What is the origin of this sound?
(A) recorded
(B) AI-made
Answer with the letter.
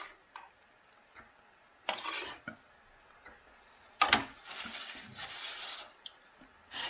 A